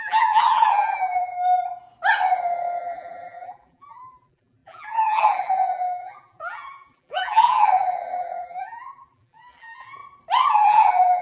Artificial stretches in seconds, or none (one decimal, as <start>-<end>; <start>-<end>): 0.0-1.3; 2.8-10.0; 10.5-11.2